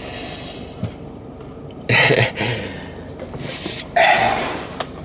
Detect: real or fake real